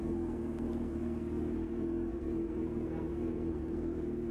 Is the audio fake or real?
fake